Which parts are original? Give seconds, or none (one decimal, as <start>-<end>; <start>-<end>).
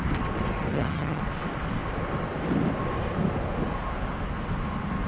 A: 0.0-0.7; 1.2-5.1